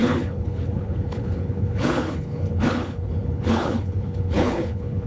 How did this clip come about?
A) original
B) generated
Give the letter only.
B